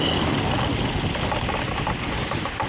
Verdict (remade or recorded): recorded